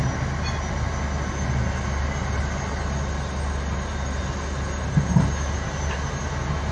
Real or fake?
real